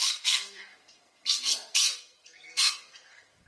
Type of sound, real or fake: fake